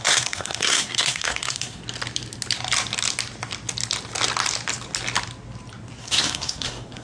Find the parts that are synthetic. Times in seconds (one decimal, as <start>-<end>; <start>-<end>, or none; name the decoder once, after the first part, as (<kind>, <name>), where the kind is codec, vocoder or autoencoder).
0.0-1.8 (codec, SNAC); 6.0-7.0